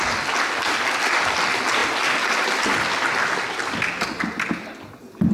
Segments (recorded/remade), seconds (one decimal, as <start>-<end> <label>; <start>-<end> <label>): 0.0-5.3 recorded